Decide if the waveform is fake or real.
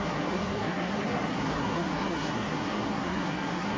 fake